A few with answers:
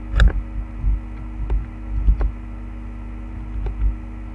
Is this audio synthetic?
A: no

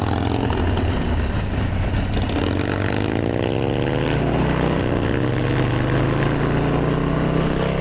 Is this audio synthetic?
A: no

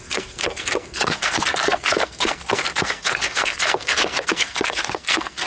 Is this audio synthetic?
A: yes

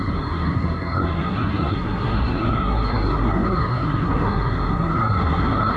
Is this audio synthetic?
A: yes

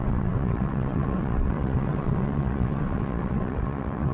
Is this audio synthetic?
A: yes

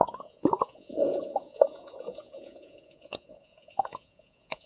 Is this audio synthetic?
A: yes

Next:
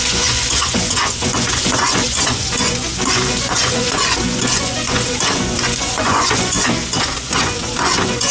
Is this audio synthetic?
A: yes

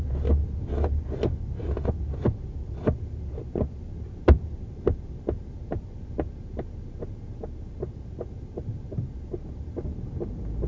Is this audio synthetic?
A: no